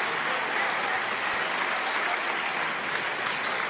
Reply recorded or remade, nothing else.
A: recorded